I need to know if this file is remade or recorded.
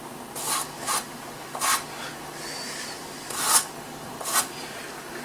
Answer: recorded